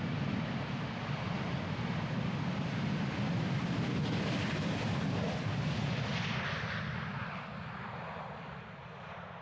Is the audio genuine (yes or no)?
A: no